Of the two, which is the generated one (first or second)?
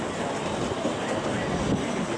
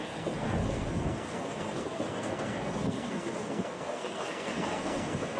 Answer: second